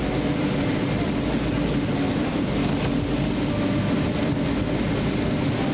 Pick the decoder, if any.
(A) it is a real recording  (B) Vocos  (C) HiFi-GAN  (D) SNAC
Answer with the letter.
A